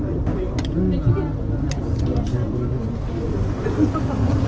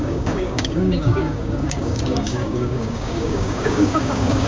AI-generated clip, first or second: second